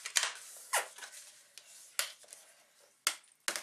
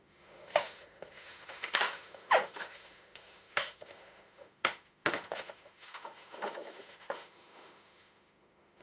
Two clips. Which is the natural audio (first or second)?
first